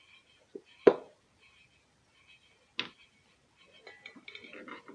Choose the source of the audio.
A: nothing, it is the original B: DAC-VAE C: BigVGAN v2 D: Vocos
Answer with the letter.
A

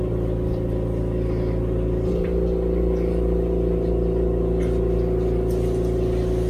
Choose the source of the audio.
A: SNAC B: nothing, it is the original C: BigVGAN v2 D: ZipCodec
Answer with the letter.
B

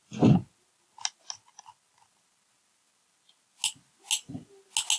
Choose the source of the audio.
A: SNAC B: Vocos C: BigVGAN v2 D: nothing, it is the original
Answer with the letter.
D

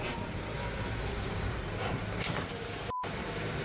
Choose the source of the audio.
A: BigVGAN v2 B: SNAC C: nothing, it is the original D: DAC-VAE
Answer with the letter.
A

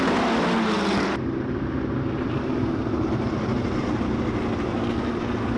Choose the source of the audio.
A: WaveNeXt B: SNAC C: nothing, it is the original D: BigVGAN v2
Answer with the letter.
C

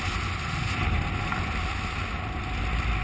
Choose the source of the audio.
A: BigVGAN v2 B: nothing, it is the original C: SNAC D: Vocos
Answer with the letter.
B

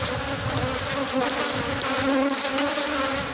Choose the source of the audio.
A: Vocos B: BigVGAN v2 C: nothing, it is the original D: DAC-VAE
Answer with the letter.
C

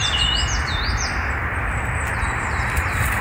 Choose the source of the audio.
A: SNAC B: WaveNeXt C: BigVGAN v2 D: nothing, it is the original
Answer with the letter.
D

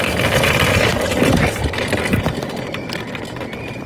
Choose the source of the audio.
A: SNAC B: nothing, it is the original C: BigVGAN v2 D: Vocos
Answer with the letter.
B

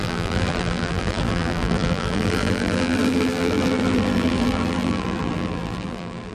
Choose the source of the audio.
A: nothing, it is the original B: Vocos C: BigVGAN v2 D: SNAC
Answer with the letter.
C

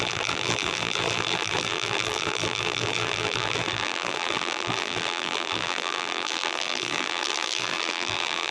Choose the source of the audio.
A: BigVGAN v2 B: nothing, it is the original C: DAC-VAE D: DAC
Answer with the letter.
A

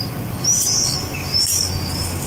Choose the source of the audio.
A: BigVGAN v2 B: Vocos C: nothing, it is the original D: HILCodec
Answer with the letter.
C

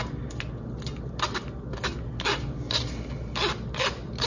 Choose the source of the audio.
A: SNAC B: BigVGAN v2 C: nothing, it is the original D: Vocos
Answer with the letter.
C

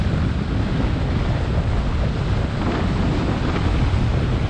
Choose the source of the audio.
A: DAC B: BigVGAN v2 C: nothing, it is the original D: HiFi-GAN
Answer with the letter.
C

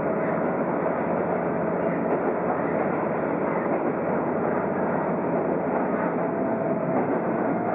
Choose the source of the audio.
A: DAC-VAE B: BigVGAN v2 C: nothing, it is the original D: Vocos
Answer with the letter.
C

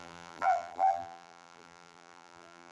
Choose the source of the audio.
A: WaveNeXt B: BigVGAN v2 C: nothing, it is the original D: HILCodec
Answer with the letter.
B